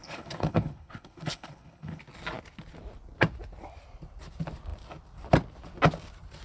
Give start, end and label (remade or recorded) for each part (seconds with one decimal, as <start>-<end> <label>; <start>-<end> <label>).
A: 0.0-2.0 remade; 2.0-6.4 recorded